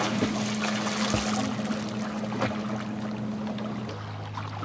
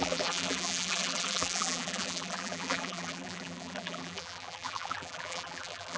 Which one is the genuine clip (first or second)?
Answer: first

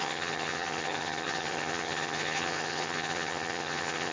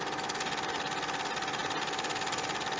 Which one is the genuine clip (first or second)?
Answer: second